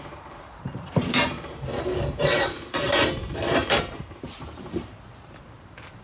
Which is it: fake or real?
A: fake